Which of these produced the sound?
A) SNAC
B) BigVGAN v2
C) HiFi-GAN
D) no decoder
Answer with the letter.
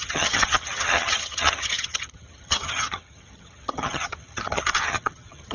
C